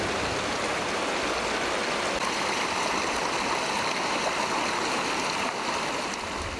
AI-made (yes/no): no